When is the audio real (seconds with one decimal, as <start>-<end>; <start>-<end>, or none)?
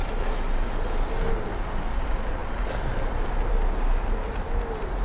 0.0-5.0